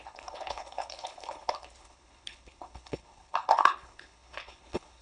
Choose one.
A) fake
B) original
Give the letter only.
A